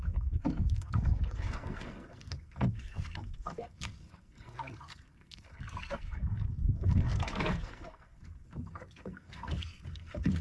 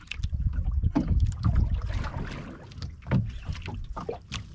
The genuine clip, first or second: second